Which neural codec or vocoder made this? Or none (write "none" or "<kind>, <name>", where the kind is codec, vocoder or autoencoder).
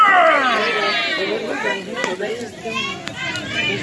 none